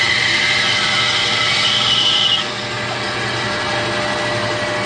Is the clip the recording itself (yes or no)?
yes